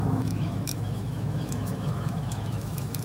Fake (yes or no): yes